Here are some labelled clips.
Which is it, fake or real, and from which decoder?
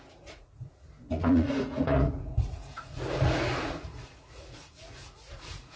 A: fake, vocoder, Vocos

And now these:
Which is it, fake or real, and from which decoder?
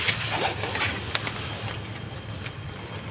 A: real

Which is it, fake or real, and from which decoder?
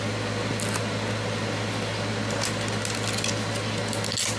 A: real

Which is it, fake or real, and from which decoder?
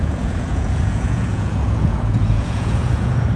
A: fake, vocoder, Vocos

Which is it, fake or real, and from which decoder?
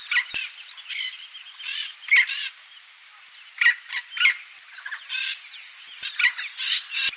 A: real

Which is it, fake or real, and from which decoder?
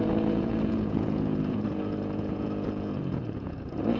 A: fake, vocoder, Vocos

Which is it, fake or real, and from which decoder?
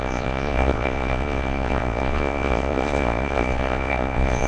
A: fake, vocoder, Vocos